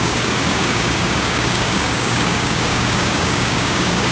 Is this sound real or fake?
fake